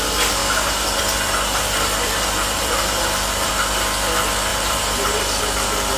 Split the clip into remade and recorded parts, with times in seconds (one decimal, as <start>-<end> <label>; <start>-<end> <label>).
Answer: 0.0-0.4 recorded; 0.4-3.5 remade; 3.5-4.5 recorded; 4.5-5.4 remade; 5.4-6.0 recorded